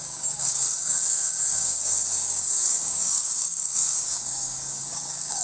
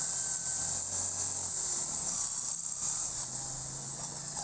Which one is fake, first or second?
first